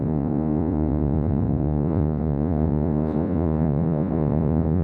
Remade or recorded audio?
remade